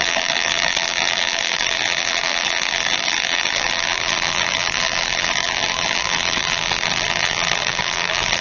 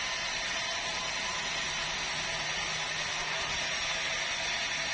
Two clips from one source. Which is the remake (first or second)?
first